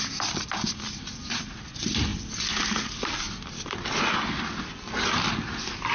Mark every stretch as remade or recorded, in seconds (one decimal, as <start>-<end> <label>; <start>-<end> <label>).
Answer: 0.0-5.9 recorded